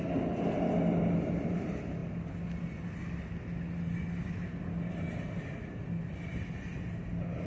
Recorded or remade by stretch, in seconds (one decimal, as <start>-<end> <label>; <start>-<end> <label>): 0.0-7.5 recorded